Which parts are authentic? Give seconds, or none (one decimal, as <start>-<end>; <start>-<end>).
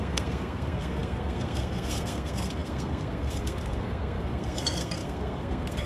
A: none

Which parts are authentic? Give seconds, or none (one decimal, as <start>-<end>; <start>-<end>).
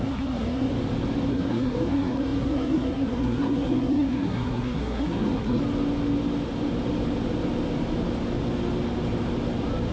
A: 0.7-1.3; 5.6-9.9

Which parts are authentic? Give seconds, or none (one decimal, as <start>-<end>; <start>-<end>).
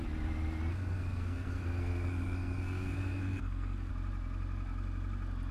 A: 0.0-0.7; 3.9-5.5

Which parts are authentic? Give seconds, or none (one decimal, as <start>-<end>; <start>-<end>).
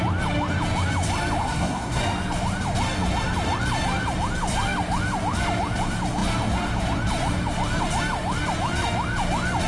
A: 0.0-1.4; 2.0-9.7